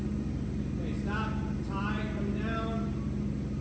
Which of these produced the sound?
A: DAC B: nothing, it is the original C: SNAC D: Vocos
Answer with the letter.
B